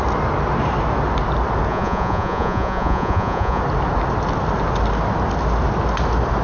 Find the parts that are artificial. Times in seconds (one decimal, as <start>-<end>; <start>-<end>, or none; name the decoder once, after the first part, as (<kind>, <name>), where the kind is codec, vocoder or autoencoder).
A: 1.7-3.6 (vocoder, Vocos)